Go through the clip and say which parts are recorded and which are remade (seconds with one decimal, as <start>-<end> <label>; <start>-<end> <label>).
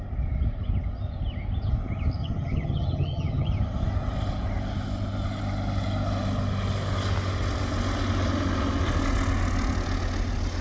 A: 0.0-2.2 recorded; 2.2-3.5 remade; 3.5-10.6 recorded